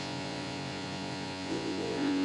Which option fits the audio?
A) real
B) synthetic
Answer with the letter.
B